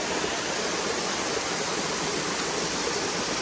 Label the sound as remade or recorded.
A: recorded